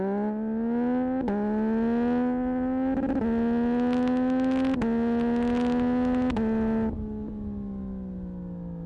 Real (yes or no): yes